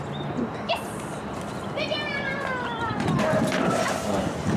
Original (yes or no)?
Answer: yes